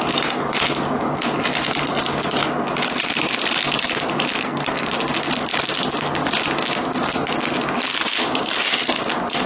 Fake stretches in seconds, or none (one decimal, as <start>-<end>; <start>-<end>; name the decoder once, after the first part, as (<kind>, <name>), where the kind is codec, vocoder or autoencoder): 4.3-4.9 (codec, SNAC)